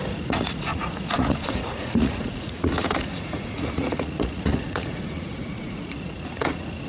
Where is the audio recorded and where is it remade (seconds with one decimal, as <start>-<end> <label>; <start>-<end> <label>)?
0.0-6.9 remade